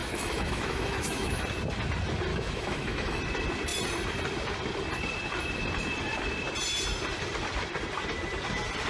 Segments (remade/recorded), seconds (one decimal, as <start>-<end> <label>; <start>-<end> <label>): 0.0-1.4 remade; 1.4-2.3 recorded; 2.3-3.2 remade; 3.2-8.9 recorded